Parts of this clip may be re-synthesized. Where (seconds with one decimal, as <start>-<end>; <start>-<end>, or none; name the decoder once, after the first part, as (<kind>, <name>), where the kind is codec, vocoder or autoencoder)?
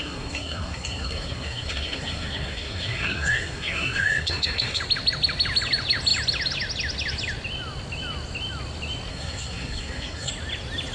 0.0-4.8 (codec, SNAC); 9.1-10.3